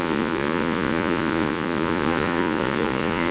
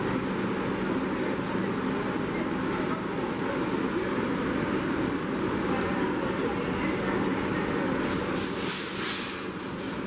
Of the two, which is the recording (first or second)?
second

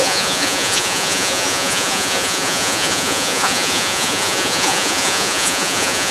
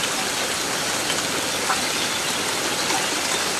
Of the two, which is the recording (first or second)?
second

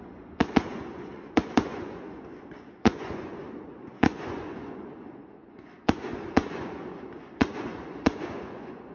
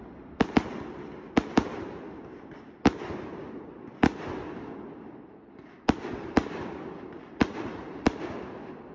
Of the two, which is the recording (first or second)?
second